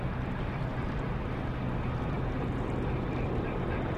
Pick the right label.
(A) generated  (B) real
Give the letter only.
B